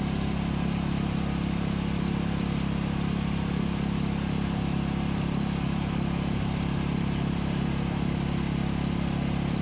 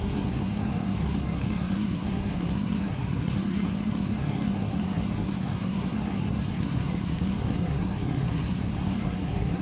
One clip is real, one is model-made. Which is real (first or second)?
first